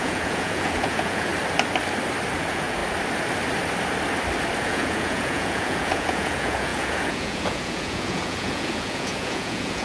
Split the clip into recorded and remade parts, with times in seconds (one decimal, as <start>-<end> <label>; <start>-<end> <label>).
0.0-1.3 remade; 1.3-2.4 recorded; 2.4-2.8 remade; 2.8-4.6 recorded; 4.6-9.8 remade